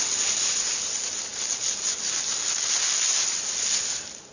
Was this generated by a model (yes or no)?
no